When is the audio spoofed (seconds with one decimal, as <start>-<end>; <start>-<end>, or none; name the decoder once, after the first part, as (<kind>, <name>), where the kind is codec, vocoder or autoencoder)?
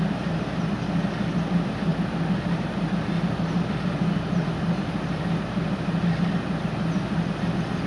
none